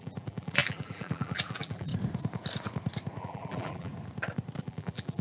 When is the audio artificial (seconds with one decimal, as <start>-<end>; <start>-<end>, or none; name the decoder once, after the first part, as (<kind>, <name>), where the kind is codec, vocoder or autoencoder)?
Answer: 0.0-1.9 (vocoder, BigVGAN v2); 3.2-3.9; 4.6-5.2